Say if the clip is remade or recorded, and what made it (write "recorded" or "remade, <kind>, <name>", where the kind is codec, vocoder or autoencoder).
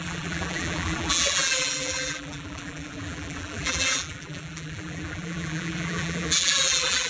remade, vocoder, BigVGAN v2